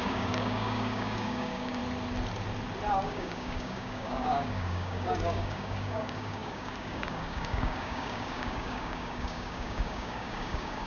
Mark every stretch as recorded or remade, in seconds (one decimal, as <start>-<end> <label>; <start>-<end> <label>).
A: 0.0-1.8 remade; 1.8-2.9 recorded; 2.9-10.9 remade